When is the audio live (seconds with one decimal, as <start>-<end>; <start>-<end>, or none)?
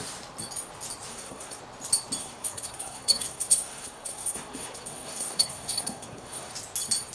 0.0-1.1; 1.6-2.2; 6.5-7.1